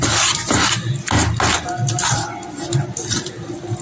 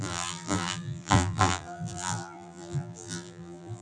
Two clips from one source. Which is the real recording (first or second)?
first